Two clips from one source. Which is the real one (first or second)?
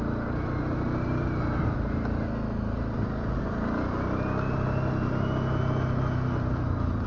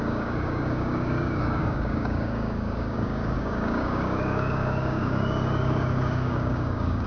first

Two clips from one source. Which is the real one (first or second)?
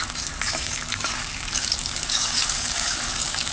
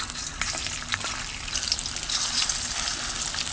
second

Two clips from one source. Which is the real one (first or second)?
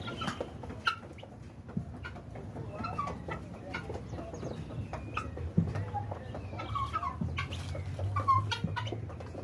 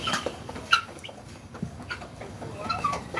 first